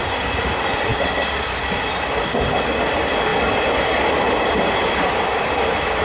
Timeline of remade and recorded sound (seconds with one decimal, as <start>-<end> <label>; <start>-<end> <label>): 0.0-6.0 recorded